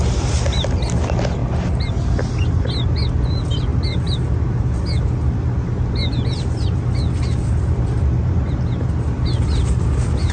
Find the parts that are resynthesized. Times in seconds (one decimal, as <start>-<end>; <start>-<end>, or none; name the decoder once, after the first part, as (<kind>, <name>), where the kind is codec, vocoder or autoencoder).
1.4-1.9 (vocoder, BigVGAN v2); 3.7-4.8